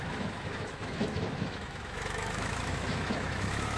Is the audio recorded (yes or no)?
no